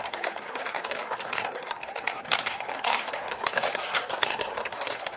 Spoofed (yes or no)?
yes